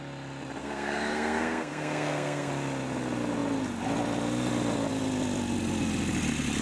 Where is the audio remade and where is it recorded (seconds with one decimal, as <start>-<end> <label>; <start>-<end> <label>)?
0.0-0.6 recorded; 0.6-2.5 remade; 2.5-6.6 recorded